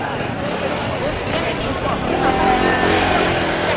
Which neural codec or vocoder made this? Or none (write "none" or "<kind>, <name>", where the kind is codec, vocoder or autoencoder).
none